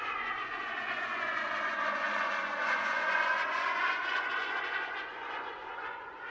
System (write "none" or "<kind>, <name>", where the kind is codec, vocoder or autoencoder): vocoder, Vocos